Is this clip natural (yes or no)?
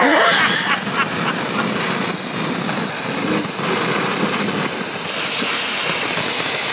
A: yes